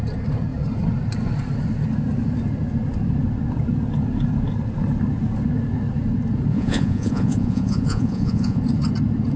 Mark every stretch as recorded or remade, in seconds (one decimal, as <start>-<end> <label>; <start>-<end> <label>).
0.0-6.5 recorded; 6.5-8.6 remade; 8.6-9.4 recorded